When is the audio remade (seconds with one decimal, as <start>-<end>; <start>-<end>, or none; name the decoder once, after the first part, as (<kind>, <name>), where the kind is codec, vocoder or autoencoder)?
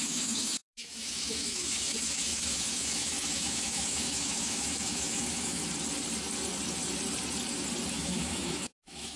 0.0-5.6 (autoencoder, DAC-VAE); 7.9-9.2